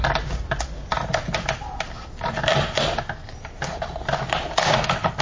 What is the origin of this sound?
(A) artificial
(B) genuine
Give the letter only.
B